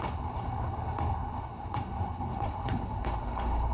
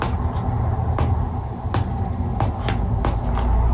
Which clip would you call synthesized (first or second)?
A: first